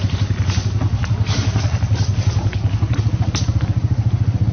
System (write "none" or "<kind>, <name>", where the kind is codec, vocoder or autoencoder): none